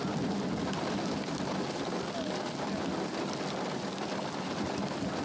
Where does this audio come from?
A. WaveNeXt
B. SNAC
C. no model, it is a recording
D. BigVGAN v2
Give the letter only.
C